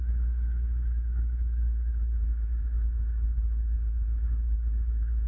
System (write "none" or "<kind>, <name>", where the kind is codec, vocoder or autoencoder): codec, SNAC